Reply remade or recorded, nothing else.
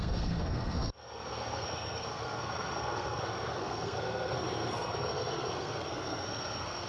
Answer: remade